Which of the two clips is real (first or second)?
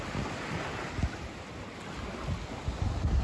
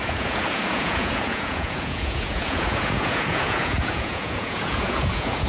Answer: first